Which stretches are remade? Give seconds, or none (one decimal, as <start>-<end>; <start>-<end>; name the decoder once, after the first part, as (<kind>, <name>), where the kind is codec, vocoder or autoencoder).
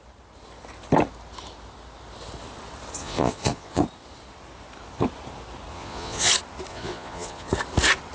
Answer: 3.0-3.8 (vocoder, Vocos); 5.7-6.3; 6.7-7.5